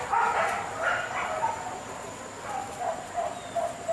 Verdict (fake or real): real